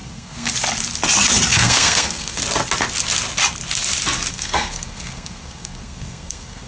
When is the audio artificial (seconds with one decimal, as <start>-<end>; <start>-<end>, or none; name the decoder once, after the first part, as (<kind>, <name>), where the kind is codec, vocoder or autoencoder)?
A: 0.0-0.5 (codec, SNAC); 1.5-2.4; 4.3-6.7

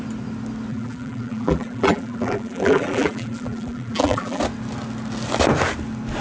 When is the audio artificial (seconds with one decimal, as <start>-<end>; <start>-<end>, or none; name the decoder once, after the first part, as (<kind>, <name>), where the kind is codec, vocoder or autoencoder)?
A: 0.7-4.4 (vocoder, BigVGAN v2)

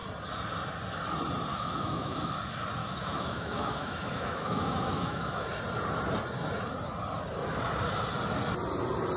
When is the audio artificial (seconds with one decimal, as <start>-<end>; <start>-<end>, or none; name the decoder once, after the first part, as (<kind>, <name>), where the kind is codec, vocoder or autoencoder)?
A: 1.5-2.3 (autoencoder, DAC-VAE); 2.8-5.5

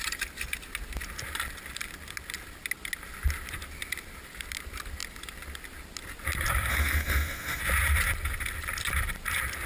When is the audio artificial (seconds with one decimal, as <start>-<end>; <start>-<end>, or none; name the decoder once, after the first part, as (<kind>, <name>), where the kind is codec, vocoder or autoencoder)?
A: 6.7-7.6 (autoencoder, DAC-VAE)

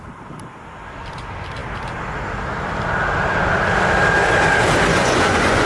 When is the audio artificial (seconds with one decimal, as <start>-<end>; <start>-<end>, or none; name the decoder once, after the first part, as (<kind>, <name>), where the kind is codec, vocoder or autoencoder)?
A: 4.9-5.7 (vocoder, Vocos)

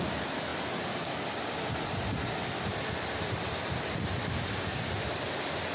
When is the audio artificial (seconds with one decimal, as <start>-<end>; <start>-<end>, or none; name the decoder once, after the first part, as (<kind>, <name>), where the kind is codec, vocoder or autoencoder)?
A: none

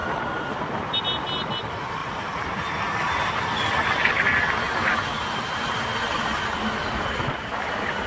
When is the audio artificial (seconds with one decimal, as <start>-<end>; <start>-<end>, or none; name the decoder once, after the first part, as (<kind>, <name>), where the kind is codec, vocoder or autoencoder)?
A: 0.0-1.0 (vocoder, BigVGAN v2)

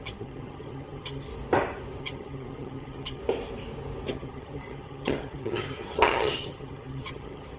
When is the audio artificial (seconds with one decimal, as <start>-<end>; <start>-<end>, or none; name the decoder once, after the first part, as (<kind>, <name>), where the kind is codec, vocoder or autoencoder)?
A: 0.0-1.3 (vocoder, HiFi-GAN); 2.0-3.2; 4.1-7.6